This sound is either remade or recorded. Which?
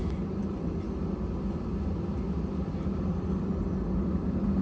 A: recorded